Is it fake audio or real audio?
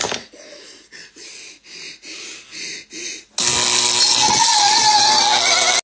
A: real